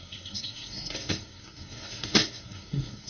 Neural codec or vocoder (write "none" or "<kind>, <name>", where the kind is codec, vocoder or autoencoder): codec, SNAC